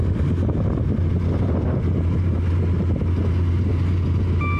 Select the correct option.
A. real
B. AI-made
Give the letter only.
A